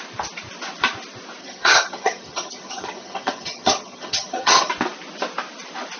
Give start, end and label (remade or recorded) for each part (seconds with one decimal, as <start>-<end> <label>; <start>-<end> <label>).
0.0-1.4 recorded; 1.4-4.7 remade; 4.7-6.0 recorded